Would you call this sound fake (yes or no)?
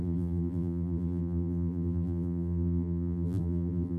yes